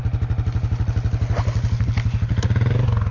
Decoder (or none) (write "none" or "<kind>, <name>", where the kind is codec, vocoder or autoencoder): none